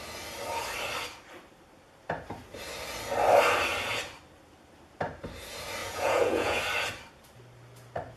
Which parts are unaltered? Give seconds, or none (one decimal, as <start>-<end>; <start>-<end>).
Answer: 0.0-5.8; 6.6-8.2